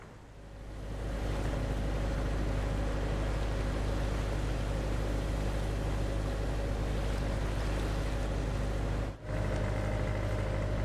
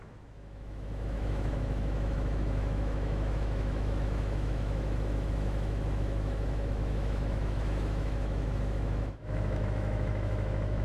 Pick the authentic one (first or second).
first